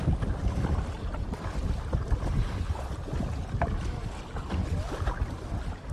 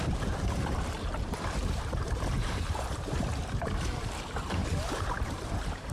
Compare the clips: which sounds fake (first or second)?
second